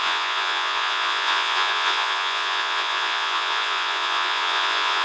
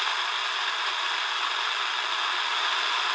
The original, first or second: second